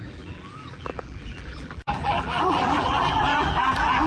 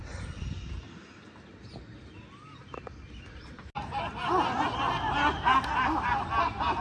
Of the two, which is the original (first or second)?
second